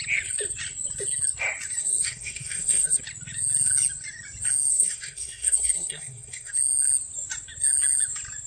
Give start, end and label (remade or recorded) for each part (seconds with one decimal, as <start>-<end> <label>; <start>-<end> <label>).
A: 0.0-1.8 recorded; 1.8-3.0 remade; 3.0-4.7 recorded; 4.7-6.5 remade; 6.5-8.5 recorded